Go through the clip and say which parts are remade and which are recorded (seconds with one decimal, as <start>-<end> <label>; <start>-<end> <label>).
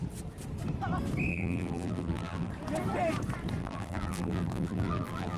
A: 0.0-1.3 recorded; 1.3-2.5 remade; 2.5-3.6 recorded; 3.6-5.4 remade